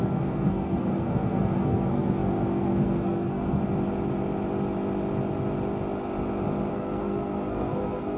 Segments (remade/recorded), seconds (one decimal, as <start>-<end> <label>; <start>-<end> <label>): 0.0-3.6 remade; 3.6-6.7 recorded; 6.7-8.2 remade